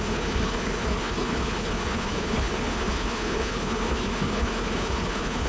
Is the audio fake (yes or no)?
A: yes